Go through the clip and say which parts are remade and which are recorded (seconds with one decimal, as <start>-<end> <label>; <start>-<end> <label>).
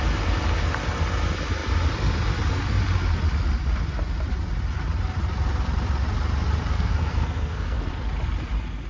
0.0-6.7 recorded; 6.7-7.9 remade; 7.9-8.9 recorded